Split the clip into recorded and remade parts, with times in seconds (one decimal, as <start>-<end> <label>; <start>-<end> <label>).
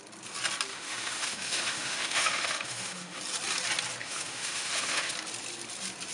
0.0-0.7 recorded; 0.7-3.2 remade; 3.2-4.0 recorded; 4.0-5.1 remade; 5.1-6.1 recorded